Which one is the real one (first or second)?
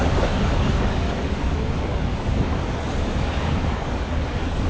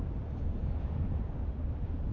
second